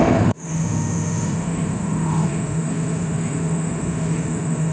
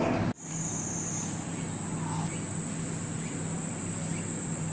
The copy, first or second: first